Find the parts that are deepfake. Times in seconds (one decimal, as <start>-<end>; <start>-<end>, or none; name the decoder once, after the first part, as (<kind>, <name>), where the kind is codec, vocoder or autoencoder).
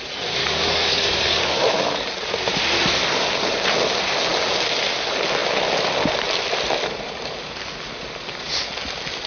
0.4-1.6 (codec, DAC)